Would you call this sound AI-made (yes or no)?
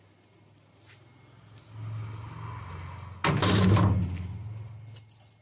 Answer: no